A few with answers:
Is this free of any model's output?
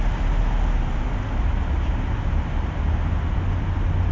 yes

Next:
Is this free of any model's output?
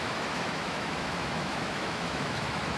no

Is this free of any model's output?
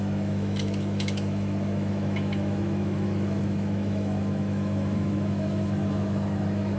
no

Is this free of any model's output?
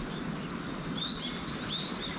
yes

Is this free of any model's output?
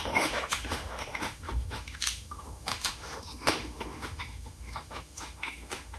no